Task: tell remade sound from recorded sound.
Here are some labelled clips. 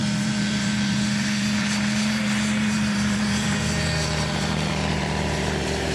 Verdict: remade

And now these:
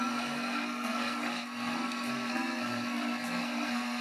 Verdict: remade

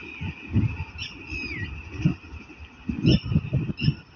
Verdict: recorded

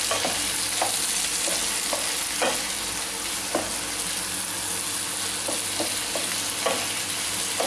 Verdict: recorded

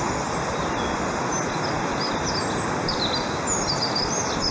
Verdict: recorded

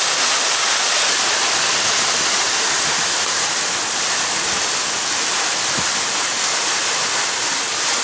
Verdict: remade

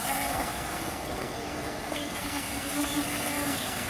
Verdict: remade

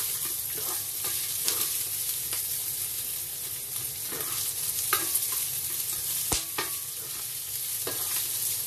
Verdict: recorded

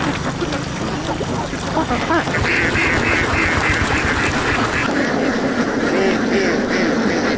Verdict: recorded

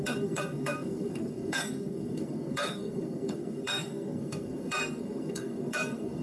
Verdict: remade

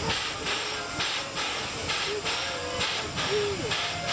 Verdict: recorded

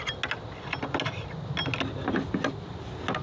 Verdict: recorded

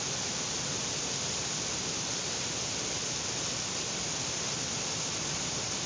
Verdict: remade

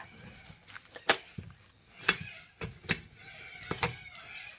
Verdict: recorded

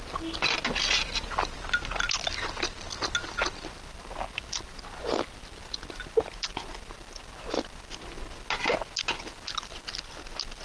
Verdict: recorded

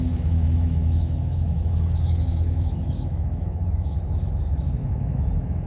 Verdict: remade